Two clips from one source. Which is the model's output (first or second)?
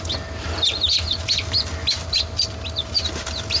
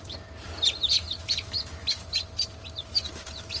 second